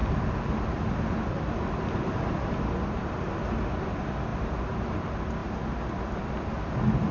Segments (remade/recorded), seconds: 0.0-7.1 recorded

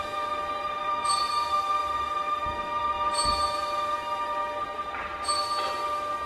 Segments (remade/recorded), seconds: 0.0-0.6 recorded; 0.6-1.3 remade; 1.3-6.3 recorded

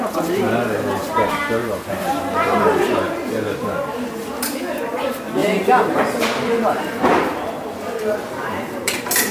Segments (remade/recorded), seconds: 0.0-1.6 recorded; 1.6-2.2 remade; 2.2-5.4 recorded; 5.4-6.2 remade; 6.2-9.3 recorded

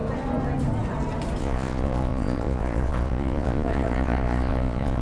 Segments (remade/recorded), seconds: 0.0-1.4 recorded; 1.4-5.0 remade

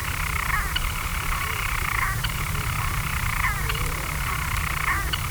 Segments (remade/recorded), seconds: 0.0-1.1 recorded; 1.1-3.8 remade; 3.8-5.3 recorded